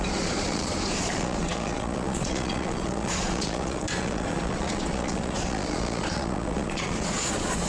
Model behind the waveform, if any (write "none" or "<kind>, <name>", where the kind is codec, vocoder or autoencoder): vocoder, Vocos